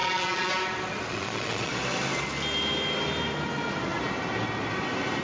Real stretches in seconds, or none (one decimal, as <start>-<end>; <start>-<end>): 0.5-1.1; 1.7-5.2